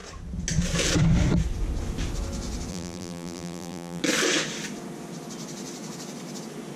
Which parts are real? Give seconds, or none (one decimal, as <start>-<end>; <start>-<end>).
0.0-2.7; 4.0-6.8